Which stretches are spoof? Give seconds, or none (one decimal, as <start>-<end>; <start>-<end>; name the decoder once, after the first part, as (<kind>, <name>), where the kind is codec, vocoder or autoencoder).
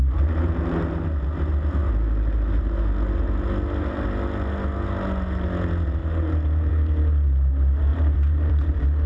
6.0-6.7 (vocoder, BigVGAN v2); 7.9-8.5